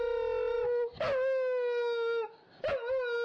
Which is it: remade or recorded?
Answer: recorded